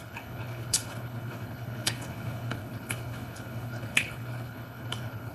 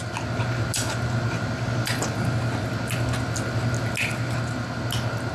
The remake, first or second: first